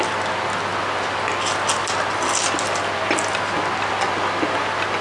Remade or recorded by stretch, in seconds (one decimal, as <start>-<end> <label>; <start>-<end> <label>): 0.0-5.0 recorded